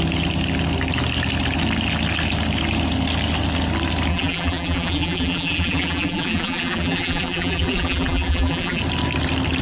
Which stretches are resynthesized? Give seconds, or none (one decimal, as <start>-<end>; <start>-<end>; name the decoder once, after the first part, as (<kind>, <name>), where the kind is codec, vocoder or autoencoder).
4.1-8.8 (vocoder, BigVGAN v2)